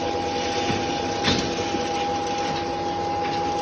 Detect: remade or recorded recorded